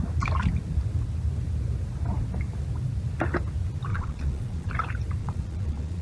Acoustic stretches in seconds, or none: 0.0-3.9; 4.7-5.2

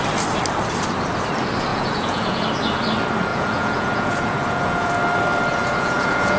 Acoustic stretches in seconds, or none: 0.0-1.7; 2.4-3.3; 4.9-5.5